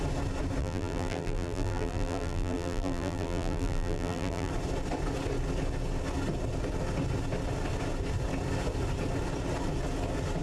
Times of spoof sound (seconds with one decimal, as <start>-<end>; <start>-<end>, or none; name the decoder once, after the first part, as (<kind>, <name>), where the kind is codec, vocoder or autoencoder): 0.6-4.5 (vocoder, BigVGAN v2)